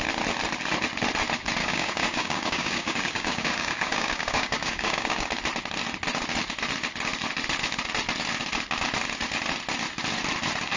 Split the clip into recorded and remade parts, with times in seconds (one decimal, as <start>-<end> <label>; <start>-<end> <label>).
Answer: 0.0-1.6 recorded; 1.6-5.3 remade; 5.3-10.8 recorded